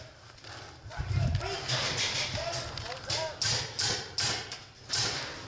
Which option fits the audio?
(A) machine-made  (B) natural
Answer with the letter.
B